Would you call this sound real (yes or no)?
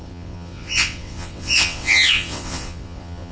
no